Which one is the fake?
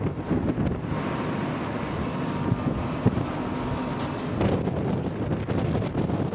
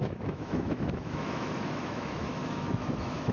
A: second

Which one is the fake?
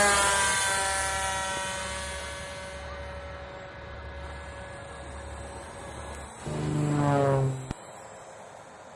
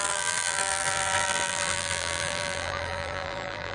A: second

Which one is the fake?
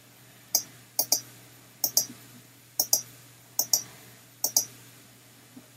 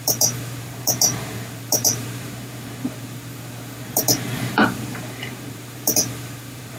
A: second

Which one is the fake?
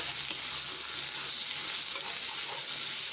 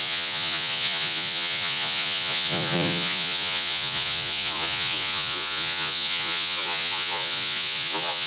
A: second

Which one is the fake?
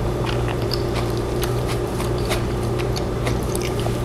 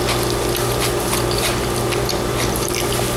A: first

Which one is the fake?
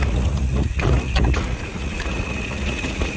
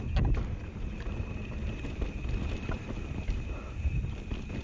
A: first